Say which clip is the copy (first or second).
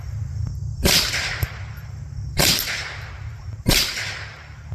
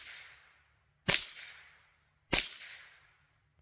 first